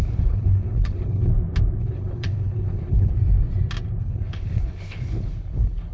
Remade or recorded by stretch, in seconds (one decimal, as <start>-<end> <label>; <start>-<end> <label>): 0.0-1.3 remade; 1.3-1.8 recorded; 1.8-3.1 remade; 3.1-4.0 recorded; 4.0-5.9 remade